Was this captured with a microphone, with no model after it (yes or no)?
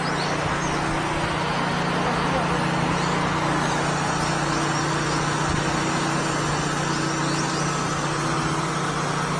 yes